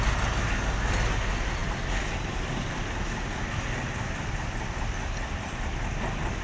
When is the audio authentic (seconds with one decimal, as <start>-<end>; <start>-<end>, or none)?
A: 0.0-6.4